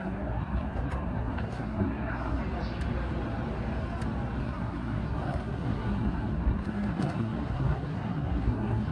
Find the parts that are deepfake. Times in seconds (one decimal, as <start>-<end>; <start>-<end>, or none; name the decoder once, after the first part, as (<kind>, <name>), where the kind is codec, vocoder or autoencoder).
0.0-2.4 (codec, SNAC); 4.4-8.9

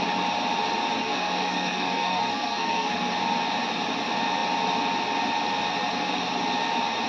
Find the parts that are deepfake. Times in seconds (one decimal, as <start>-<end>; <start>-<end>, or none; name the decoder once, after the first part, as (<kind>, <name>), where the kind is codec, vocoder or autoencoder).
1.0-3.1 (codec, SNAC)

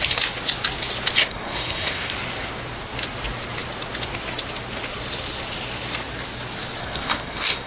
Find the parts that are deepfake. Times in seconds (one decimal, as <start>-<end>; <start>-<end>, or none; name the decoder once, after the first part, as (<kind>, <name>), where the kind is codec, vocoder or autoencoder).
1.2-2.1 (codec, SNAC); 6.8-7.7